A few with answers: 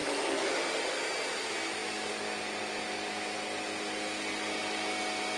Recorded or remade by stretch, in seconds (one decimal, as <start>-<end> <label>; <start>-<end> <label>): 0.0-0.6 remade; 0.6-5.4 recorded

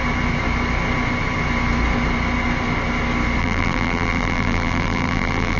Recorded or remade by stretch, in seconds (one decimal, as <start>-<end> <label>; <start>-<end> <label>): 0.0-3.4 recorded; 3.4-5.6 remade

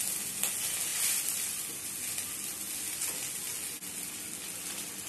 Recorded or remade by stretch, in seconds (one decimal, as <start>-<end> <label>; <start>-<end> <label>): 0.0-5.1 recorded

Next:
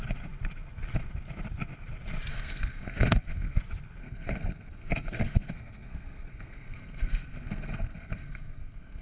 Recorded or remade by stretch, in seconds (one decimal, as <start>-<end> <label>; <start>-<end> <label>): 0.0-2.3 recorded; 2.3-3.6 remade; 3.6-4.0 recorded; 4.0-9.0 remade

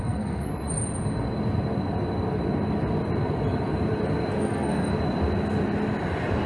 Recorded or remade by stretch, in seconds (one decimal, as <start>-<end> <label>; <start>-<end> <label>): 0.0-0.5 remade; 0.5-4.4 recorded; 4.4-4.9 remade; 4.9-6.5 recorded

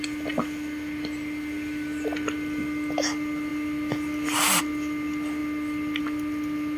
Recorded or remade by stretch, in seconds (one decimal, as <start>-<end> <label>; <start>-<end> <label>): 0.0-6.8 recorded